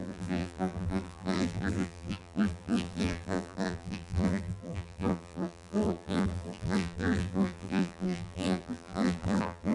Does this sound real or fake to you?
fake